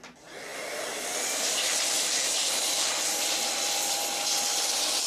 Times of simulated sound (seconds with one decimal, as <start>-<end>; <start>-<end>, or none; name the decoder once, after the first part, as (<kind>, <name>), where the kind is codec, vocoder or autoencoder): none